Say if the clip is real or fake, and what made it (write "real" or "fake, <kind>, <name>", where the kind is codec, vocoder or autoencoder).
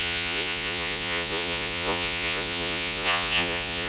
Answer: fake, vocoder, Vocos